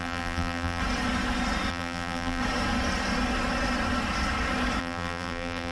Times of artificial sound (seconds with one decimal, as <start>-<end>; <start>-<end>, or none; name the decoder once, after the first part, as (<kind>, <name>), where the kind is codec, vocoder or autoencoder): 0.0-0.8 (vocoder, BigVGAN v2); 1.7-2.4; 4.8-5.7